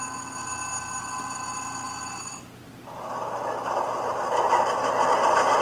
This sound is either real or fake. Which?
real